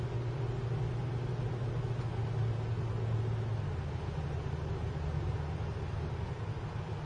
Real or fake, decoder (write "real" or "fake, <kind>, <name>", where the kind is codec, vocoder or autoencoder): real